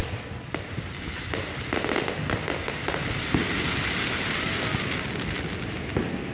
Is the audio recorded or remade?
recorded